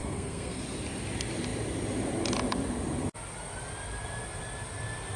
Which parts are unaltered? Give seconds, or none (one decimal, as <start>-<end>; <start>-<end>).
0.6-5.2